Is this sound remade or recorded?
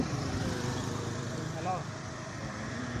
remade